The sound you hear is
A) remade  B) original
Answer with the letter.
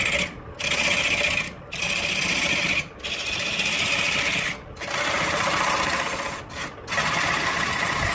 B